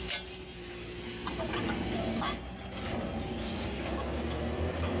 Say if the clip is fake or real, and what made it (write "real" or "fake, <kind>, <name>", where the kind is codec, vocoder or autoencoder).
real